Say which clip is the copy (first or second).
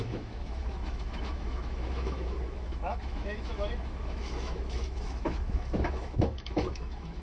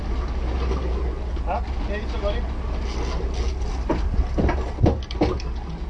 first